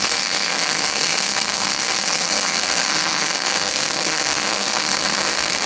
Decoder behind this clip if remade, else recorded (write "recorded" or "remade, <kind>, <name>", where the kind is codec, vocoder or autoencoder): remade, codec, SNAC